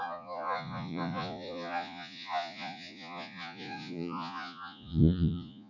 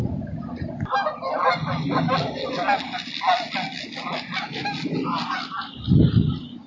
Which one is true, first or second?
second